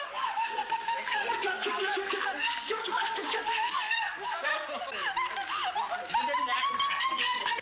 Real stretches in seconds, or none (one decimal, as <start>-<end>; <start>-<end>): 4.5-6.6